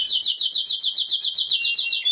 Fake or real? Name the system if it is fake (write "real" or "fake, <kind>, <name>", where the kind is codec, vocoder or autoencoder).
real